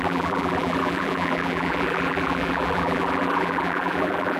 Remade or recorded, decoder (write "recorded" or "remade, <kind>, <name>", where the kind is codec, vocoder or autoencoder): remade, vocoder, BigVGAN v2